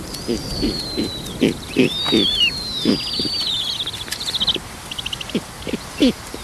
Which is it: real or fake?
fake